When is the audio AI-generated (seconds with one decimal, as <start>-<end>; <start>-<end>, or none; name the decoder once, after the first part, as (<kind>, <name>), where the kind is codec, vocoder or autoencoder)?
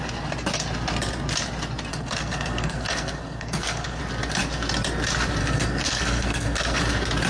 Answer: 1.9-4.0 (codec, SNAC); 5.4-6.8